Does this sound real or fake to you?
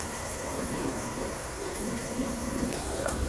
fake